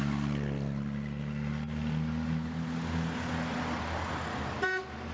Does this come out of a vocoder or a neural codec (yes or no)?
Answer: no